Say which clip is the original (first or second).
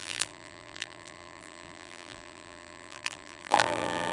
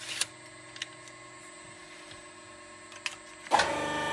second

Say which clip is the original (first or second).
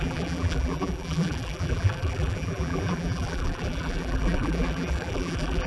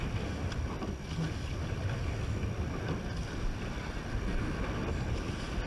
second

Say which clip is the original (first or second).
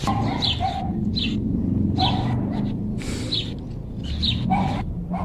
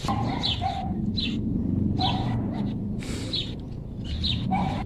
first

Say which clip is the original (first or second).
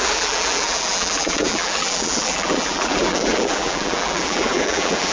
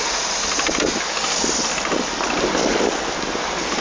second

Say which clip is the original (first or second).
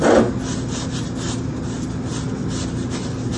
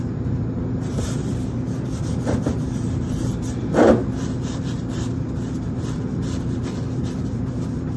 first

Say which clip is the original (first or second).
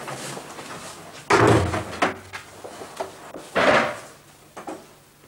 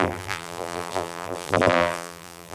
first